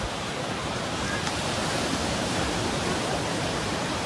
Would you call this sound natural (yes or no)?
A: no